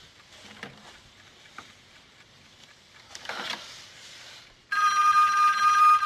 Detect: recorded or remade recorded